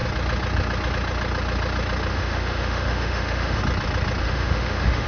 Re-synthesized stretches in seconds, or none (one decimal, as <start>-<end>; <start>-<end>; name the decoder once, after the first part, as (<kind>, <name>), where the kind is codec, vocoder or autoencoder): 2.1-3.6 (autoencoder, DAC-VAE); 4.2-5.1